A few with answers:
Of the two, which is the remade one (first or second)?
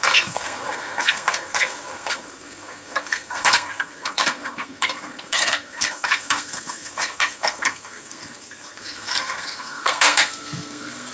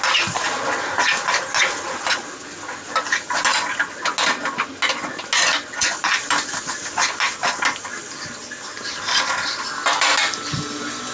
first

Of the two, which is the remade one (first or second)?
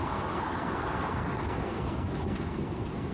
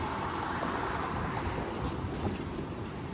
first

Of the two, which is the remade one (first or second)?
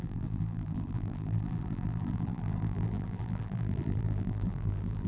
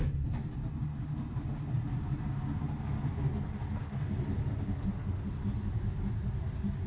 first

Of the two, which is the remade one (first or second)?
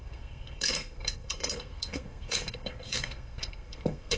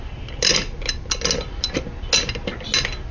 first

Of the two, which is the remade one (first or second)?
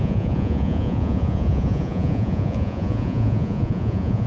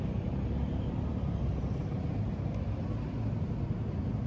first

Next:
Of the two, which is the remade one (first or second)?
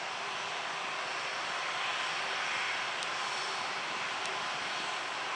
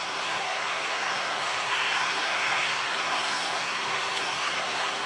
second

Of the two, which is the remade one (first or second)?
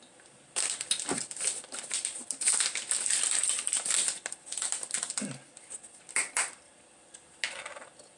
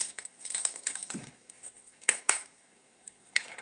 second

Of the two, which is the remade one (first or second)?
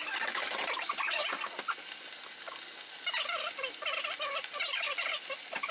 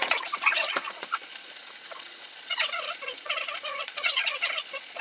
second